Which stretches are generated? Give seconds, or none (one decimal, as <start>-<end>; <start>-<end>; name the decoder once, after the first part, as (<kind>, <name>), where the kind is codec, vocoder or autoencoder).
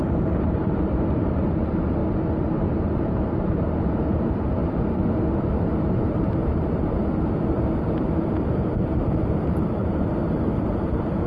0.0-2.0 (vocoder, BigVGAN v2); 3.0-4.6; 5.3-6.4; 7.8-11.3